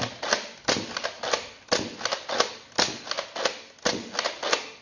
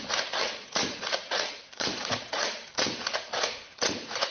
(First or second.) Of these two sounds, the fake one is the second